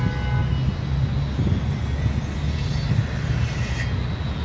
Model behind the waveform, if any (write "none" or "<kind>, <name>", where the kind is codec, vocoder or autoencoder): none